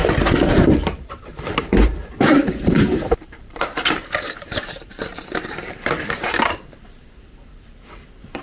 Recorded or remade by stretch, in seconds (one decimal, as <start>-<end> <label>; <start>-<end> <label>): 0.0-0.7 recorded; 0.7-5.1 remade; 5.1-5.6 recorded; 5.6-8.4 remade